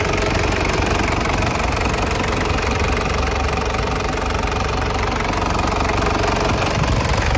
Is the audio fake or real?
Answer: real